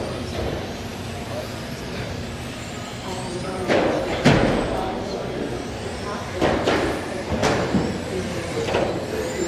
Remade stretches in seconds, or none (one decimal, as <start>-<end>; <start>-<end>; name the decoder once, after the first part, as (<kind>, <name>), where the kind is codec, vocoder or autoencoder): 0.0-9.5 (vocoder, BigVGAN v2)